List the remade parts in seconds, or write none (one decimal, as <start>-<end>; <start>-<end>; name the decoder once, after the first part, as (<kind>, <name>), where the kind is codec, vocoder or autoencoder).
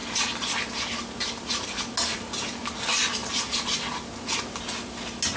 none